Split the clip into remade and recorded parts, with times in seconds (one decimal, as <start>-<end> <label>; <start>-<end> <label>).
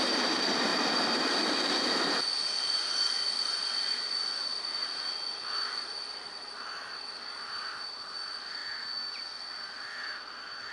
0.0-10.7 recorded